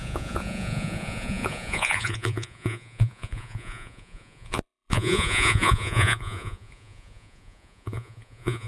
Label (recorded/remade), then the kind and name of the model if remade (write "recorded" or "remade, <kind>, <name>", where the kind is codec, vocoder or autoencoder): remade, vocoder, Vocos